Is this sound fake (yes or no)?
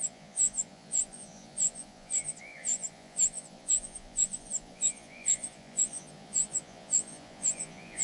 yes